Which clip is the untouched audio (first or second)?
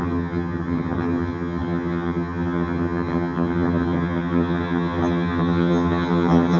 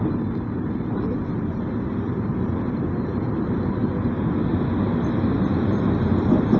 second